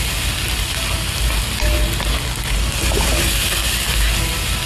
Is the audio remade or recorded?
recorded